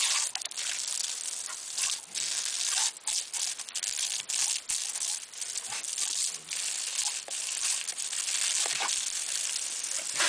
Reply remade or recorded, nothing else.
recorded